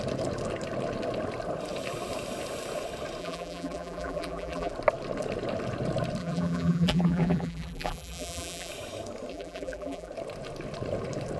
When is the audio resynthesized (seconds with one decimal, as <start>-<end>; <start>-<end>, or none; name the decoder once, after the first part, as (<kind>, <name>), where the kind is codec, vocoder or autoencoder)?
3.2-4.7 (vocoder, BigVGAN v2); 6.2-8.7; 9.3-10.1